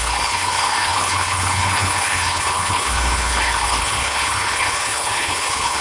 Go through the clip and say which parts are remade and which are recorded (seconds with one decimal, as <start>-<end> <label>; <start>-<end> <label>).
0.0-5.8 remade